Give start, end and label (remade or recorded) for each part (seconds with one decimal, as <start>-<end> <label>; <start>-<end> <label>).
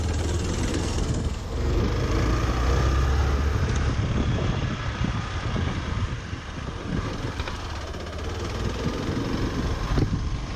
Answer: 0.0-0.7 recorded; 0.7-1.8 remade; 1.8-10.6 recorded